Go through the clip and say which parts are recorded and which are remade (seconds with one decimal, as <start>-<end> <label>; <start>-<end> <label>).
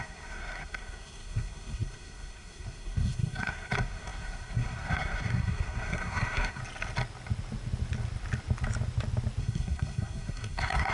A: 0.0-6.6 remade; 6.6-9.4 recorded; 9.4-10.9 remade